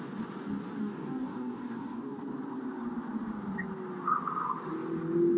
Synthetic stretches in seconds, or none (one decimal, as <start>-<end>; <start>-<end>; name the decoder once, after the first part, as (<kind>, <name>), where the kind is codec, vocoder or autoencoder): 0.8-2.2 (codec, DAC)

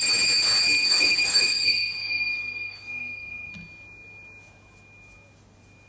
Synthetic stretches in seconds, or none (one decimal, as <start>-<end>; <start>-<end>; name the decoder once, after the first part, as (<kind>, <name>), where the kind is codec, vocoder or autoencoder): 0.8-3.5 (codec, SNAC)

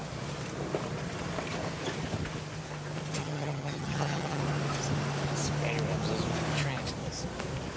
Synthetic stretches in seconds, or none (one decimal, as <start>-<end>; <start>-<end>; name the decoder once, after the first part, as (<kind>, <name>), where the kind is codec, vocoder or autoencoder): 3.2-4.4 (vocoder, HiFi-GAN)

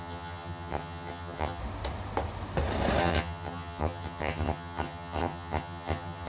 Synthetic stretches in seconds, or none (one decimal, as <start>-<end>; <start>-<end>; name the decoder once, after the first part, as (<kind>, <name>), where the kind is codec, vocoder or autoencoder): 0.0-1.6 (vocoder, HiFi-GAN); 3.0-6.3

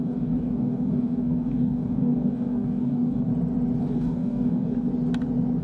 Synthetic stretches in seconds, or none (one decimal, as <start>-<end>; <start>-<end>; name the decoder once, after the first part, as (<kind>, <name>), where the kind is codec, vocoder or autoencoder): 0.0-3.3 (codec, DAC); 3.8-4.9

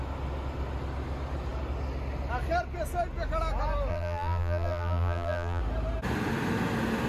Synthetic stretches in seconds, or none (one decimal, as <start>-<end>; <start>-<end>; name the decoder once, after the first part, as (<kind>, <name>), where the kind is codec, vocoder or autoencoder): 3.9-5.6 (vocoder, BigVGAN v2)